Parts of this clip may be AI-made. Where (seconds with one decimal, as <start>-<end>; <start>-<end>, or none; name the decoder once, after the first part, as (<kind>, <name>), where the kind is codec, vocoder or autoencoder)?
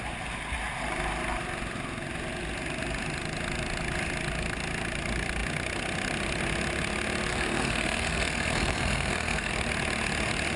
7.3-9.5 (codec, SNAC)